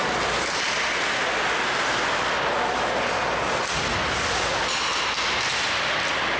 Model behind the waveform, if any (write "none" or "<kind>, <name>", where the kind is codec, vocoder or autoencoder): none